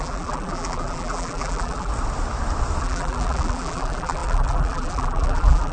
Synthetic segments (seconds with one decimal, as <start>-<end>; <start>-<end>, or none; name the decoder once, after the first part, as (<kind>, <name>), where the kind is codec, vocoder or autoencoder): 0.0-1.9 (vocoder, BigVGAN v2); 2.8-5.7